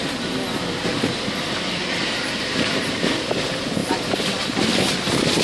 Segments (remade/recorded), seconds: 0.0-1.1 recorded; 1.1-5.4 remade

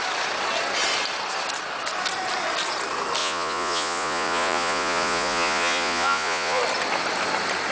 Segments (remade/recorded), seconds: 0.0-3.2 recorded; 3.2-6.6 remade; 6.6-7.7 recorded

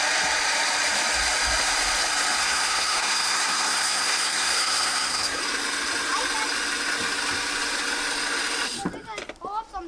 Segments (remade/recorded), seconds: 0.0-2.4 recorded; 2.4-5.4 remade; 5.4-9.9 recorded

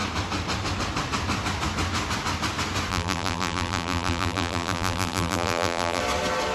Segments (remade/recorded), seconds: 0.0-2.9 recorded; 2.9-6.0 remade; 6.0-6.5 recorded

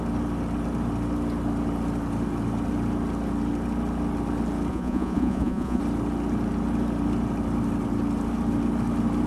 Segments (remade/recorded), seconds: 0.0-4.7 recorded; 4.7-5.8 remade; 5.8-9.3 recorded